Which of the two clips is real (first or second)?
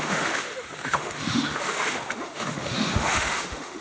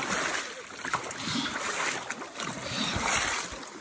second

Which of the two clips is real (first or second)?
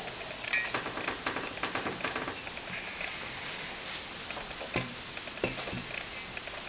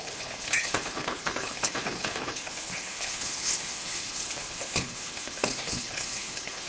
first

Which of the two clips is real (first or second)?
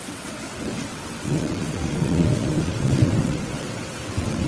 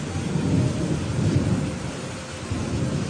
second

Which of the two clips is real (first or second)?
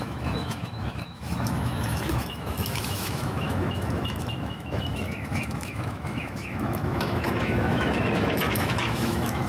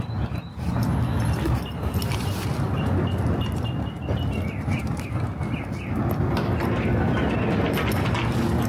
second